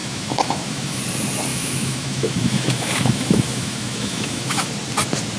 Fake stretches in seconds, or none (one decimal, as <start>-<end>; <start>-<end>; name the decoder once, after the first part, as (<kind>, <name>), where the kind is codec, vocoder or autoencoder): 0.0-1.0 (autoencoder, DAC-VAE); 1.5-4.7